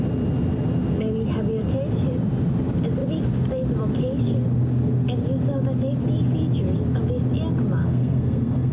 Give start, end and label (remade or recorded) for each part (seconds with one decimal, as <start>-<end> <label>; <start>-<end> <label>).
0.0-7.8 recorded; 7.8-8.7 remade